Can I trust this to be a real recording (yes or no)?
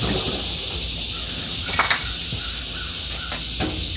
yes